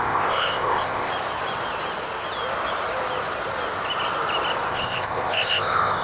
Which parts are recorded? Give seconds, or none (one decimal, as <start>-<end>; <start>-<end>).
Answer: 1.1-4.7